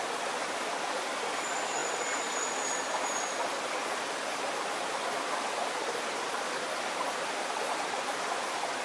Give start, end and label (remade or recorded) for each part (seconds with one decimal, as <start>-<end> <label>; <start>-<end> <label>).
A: 0.0-8.8 recorded